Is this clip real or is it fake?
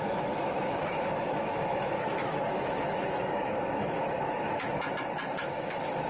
fake